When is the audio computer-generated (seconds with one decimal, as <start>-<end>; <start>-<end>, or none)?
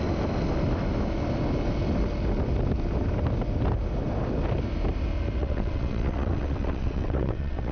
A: 5.4-7.7